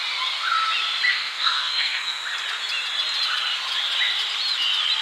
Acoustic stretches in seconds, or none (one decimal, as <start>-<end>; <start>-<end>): 0.0-1.1; 2.2-5.0